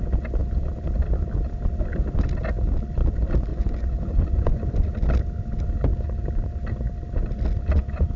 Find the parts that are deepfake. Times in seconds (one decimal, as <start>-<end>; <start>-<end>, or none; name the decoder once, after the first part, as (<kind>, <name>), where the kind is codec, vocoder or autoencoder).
3.5-4.8 (vocoder, Vocos)